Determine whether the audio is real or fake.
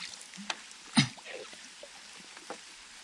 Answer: real